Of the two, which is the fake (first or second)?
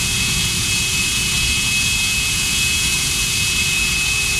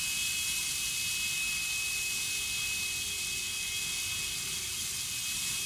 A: first